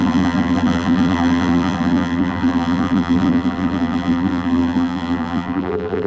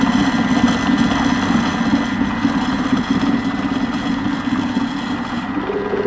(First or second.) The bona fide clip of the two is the second